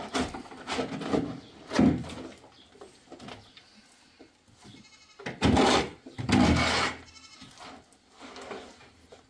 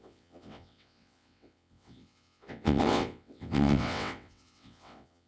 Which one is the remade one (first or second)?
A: second